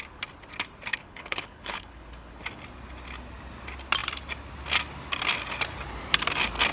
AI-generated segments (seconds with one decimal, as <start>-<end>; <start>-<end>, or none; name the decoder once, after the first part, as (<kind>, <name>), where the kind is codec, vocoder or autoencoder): 0.9-2.4 (codec, HILCodec)